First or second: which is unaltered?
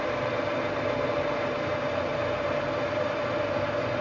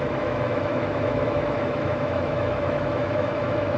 first